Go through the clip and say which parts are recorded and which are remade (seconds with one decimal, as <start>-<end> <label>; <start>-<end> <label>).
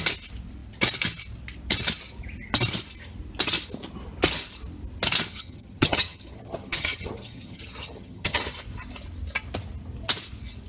0.0-5.3 recorded; 5.3-8.4 remade; 8.4-10.7 recorded